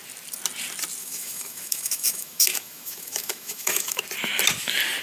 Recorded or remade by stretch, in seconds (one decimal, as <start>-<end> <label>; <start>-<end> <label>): 0.0-1.0 recorded; 1.0-4.0 remade; 4.0-5.0 recorded